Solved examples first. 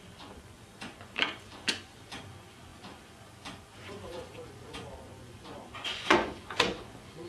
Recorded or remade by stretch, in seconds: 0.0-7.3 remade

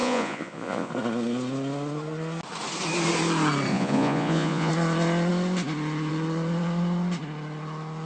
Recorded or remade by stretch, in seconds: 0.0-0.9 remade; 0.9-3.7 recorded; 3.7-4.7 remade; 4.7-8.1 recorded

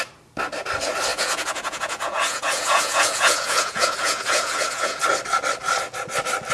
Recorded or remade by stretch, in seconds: 0.0-1.1 recorded; 1.1-5.0 remade; 5.0-6.5 recorded

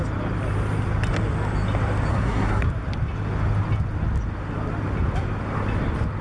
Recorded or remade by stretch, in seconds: 0.0-2.1 recorded; 2.1-2.7 remade; 2.7-6.2 recorded

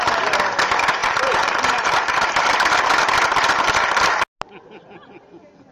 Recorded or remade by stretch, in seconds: 0.0-1.0 recorded; 1.0-2.3 remade; 2.3-5.7 recorded